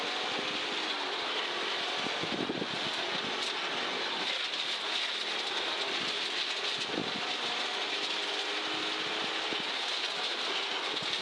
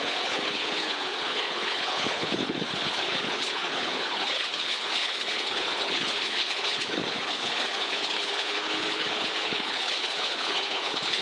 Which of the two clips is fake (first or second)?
second